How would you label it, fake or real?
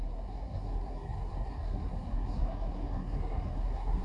fake